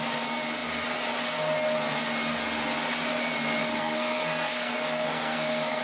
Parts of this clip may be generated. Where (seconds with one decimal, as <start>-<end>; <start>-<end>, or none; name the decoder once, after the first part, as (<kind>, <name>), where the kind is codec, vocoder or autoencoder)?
3.6-5.8 (codec, SNAC)